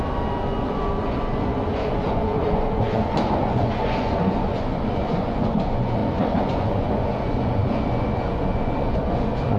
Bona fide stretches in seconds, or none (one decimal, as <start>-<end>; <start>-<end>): none